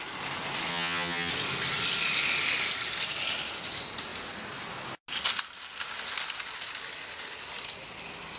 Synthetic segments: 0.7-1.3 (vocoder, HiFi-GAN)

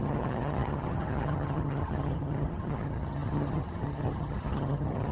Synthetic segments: 0.0-5.1 (vocoder, HiFi-GAN)